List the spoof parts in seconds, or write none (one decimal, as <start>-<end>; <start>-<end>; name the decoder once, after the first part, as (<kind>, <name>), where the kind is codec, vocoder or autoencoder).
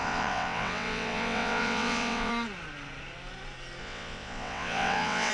0.0-2.3 (vocoder, WaveNeXt); 3.8-5.3